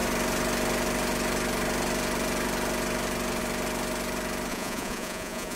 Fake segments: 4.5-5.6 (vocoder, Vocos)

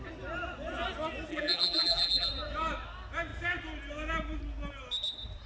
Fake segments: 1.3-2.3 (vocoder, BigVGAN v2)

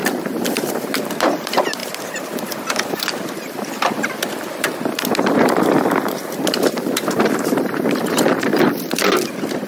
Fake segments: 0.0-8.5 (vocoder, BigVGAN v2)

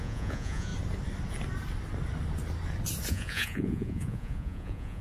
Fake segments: 0.0-0.7 (vocoder, Vocos); 3.1-5.0

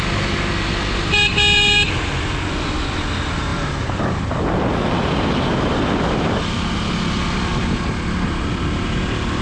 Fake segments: 3.5-4.0 (vocoder, BigVGAN v2); 7.5-8.5